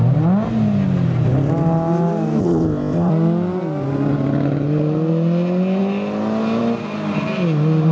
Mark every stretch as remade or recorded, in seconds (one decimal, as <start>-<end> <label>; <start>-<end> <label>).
0.0-2.4 recorded; 2.4-3.1 remade; 3.1-7.9 recorded